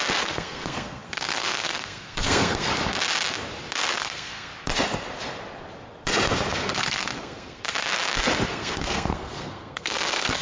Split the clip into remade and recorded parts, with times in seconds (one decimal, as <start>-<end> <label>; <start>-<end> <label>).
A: 0.0-2.7 remade; 2.7-3.9 recorded; 3.9-4.5 remade; 4.5-6.5 recorded; 6.5-7.6 remade; 7.6-8.5 recorded; 8.5-10.4 remade